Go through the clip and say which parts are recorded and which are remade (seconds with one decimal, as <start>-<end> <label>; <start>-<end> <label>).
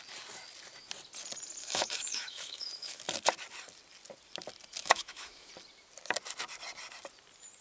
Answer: 0.0-1.6 recorded; 1.6-3.0 remade; 3.0-4.8 recorded; 4.8-5.5 remade; 5.5-7.6 recorded